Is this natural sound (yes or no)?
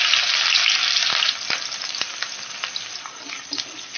yes